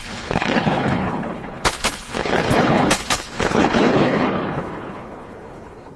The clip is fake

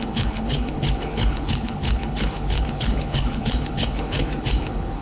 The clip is fake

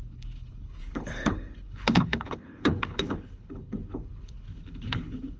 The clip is fake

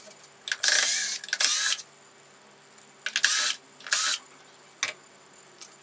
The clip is real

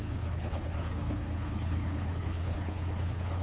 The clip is fake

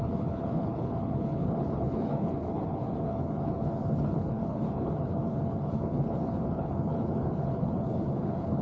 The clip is fake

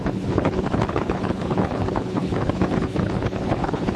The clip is fake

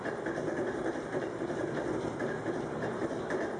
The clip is real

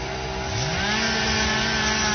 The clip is real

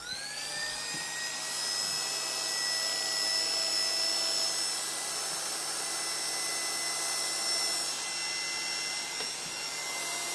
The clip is real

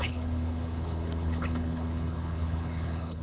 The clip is fake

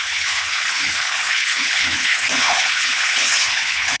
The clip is fake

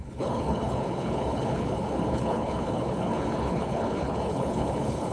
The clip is fake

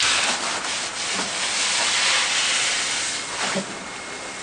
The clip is real